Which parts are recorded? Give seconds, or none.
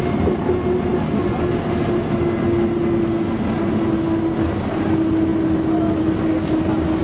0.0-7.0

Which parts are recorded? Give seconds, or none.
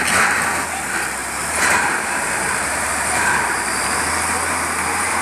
0.0-1.2; 3.8-5.2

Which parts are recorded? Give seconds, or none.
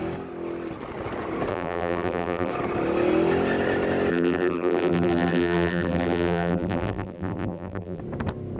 0.0-1.5; 2.5-4.1; 8.0-8.6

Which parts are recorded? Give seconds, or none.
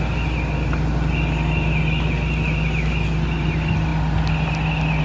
0.0-5.0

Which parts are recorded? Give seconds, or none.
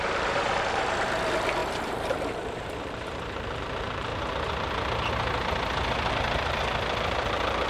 4.1-6.1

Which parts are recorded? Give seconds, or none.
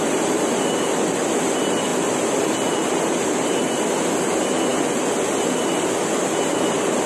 0.0-7.1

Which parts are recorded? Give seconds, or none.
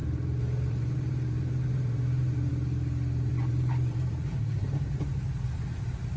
2.5-3.3; 5.2-6.2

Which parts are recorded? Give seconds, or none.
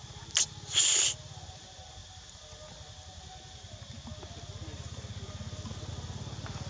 0.0-6.7